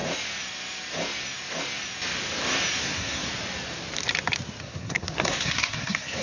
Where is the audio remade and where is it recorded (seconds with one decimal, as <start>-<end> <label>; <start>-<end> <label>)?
0.0-2.8 recorded; 2.8-3.3 remade; 3.3-4.6 recorded; 4.6-6.2 remade